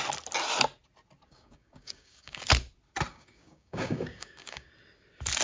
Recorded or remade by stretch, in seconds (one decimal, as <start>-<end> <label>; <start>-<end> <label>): 0.0-1.3 recorded; 1.3-2.4 remade; 2.4-3.1 recorded; 3.1-4.7 remade; 4.7-5.4 recorded

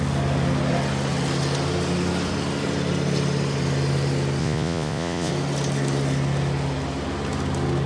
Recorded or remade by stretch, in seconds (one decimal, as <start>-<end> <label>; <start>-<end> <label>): 0.0-4.4 recorded; 4.4-5.3 remade; 5.3-7.9 recorded

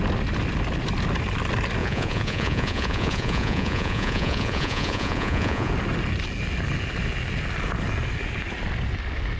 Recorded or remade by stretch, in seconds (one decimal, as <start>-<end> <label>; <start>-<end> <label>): 0.0-1.8 recorded; 1.8-5.7 remade; 5.7-9.4 recorded